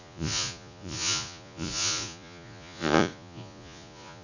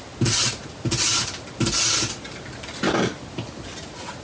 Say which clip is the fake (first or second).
first